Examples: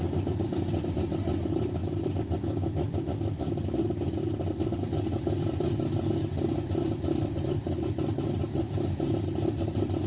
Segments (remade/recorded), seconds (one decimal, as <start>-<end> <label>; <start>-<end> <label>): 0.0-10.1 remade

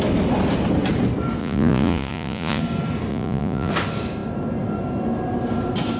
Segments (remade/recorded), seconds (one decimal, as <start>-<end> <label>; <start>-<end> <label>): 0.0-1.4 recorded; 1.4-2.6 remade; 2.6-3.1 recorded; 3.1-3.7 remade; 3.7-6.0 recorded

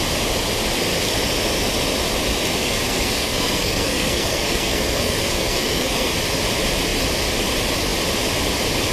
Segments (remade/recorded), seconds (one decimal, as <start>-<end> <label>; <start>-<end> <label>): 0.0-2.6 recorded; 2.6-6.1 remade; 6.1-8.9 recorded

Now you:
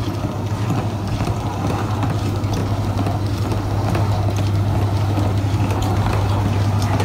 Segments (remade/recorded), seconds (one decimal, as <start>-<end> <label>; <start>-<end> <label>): 0.0-7.0 recorded